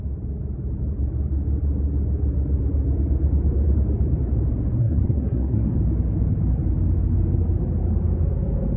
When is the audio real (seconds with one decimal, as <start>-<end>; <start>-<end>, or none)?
0.0-4.8; 5.8-8.8